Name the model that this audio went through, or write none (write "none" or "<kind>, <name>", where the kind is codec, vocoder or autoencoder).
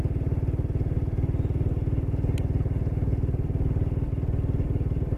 none